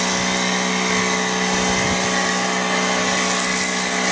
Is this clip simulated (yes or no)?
no